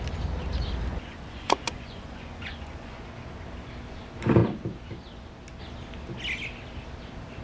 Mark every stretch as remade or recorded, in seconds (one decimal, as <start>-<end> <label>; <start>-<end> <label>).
0.0-0.9 recorded; 0.9-3.0 remade; 3.0-7.4 recorded